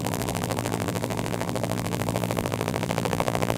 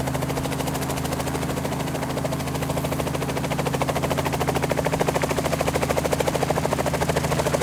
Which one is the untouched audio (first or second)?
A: second